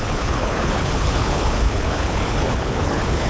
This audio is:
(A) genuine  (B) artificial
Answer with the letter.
B